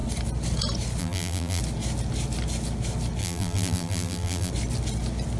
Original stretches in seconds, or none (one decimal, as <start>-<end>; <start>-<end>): 0.0-1.0; 1.6-3.2; 4.5-5.4